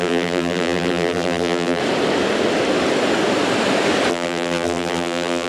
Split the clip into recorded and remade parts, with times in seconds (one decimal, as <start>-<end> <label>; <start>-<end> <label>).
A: 0.0-1.8 remade; 1.8-4.1 recorded; 4.1-5.5 remade